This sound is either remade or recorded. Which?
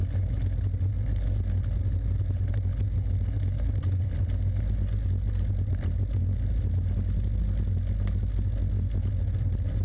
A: recorded